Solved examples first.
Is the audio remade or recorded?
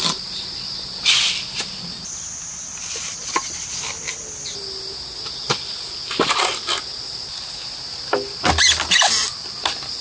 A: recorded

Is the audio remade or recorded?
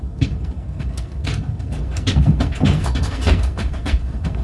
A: remade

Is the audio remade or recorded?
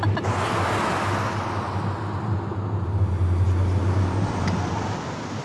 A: recorded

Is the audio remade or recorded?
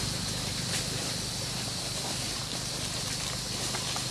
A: recorded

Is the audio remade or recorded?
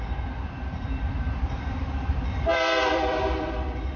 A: remade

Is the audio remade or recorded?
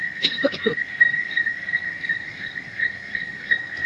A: remade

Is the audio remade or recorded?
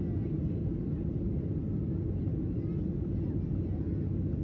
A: recorded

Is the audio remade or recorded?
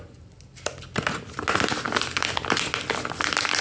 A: recorded